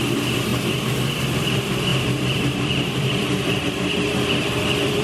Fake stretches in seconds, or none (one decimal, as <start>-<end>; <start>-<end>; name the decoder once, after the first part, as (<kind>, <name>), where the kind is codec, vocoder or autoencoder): 0.0-5.0 (vocoder, BigVGAN v2)